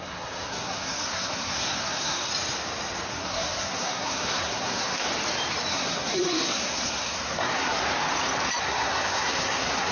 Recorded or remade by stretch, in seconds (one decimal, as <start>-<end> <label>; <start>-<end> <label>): 0.0-2.3 remade; 2.3-3.1 recorded; 3.1-5.1 remade; 5.1-5.7 recorded; 5.7-7.8 remade; 7.8-8.6 recorded; 8.6-9.9 remade